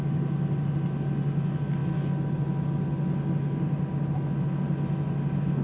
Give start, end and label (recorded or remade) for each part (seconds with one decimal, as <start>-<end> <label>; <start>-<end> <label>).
0.0-5.6 recorded